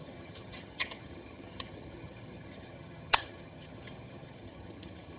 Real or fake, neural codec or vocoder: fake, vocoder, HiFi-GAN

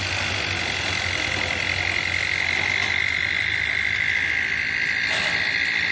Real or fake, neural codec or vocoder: real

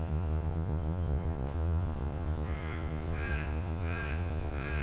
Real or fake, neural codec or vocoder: fake, vocoder, Vocos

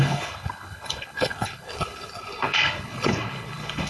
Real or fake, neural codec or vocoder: fake, codec, HILCodec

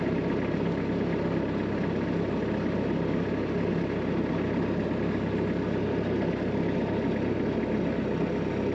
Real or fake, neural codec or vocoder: real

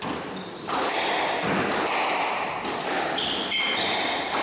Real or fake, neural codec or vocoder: real